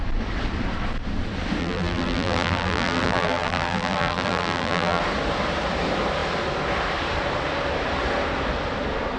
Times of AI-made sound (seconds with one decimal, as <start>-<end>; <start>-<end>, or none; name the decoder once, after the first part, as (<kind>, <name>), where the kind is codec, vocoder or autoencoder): 1.6-5.0 (vocoder, BigVGAN v2)